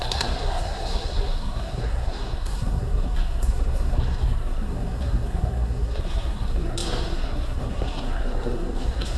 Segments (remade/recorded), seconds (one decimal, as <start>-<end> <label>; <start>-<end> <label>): 0.0-9.2 remade